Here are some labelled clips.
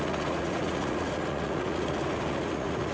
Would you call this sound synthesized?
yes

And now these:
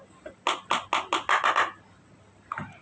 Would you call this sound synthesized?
no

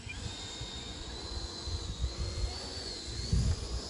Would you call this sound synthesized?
yes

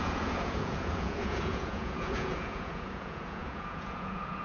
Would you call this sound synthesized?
yes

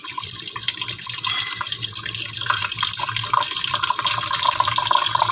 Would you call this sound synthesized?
no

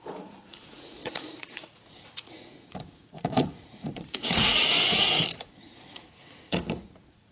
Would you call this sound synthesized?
yes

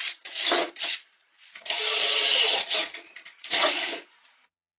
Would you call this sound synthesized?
yes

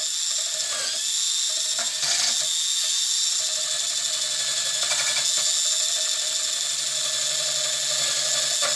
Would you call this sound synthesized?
no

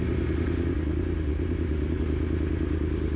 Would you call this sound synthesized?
no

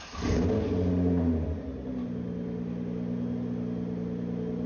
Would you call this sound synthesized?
no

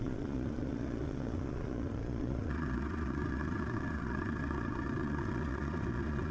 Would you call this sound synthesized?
yes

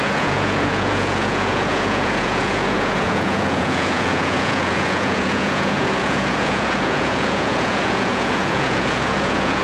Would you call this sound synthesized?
yes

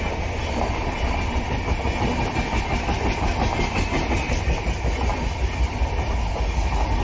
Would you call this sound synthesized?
no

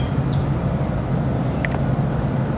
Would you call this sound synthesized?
no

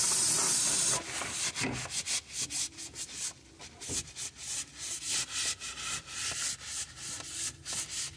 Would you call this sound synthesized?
no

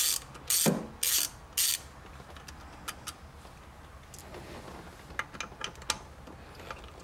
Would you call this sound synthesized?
no